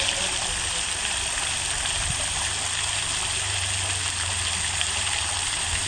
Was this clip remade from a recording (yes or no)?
no